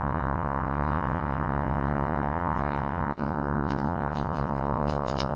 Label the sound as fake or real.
fake